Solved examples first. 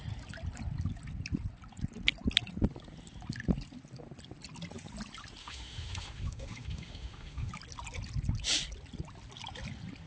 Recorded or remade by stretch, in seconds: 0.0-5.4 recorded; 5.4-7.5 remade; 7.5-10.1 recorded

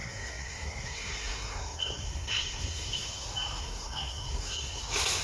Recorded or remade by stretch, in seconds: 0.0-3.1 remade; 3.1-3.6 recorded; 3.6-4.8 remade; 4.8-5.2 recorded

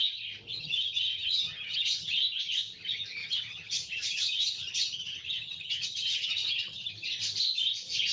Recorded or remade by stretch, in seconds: 0.0-0.5 recorded; 0.5-2.1 remade; 2.1-3.2 recorded; 3.2-6.9 remade; 6.9-8.1 recorded

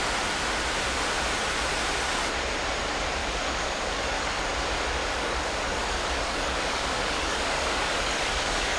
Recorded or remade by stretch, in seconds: 0.0-3.2 recorded; 3.2-4.4 remade; 4.4-5.0 recorded; 5.0-8.8 remade

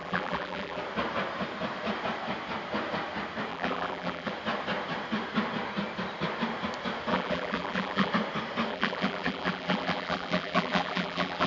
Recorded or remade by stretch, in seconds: 0.0-0.8 remade; 0.8-3.5 recorded; 3.5-4.3 remade; 4.3-7.1 recorded; 7.1-8.1 remade; 8.1-8.7 recorded; 8.7-11.5 remade

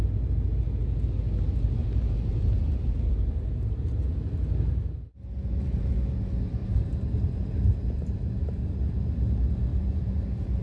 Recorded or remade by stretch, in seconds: 0.0-1.8 recorded; 1.8-4.0 remade; 4.0-9.7 recorded; 9.7-10.6 remade